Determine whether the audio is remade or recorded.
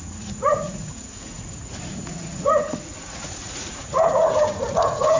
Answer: remade